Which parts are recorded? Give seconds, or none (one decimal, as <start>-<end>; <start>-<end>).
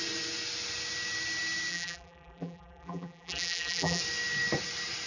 0.0-1.7; 4.0-5.1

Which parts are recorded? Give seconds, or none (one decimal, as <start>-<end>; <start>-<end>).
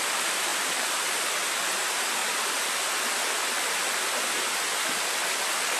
2.2-5.8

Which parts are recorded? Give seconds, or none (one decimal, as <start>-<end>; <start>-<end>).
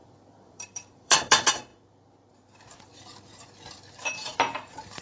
1.7-5.0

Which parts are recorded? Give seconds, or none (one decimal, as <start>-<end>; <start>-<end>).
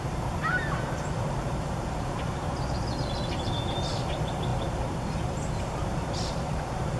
2.4-3.9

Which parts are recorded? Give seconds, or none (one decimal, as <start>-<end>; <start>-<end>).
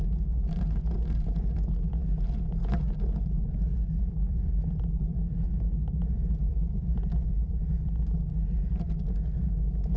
0.0-3.7; 5.2-5.8; 7.6-10.0